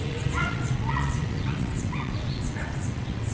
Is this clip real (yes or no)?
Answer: no